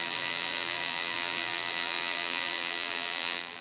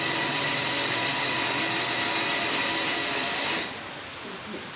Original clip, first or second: second